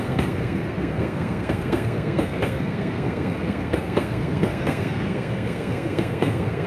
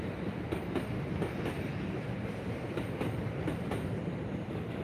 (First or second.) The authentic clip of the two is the second